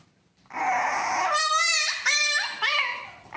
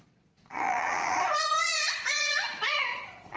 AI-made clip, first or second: second